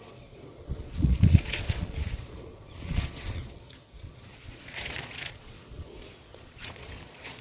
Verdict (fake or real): fake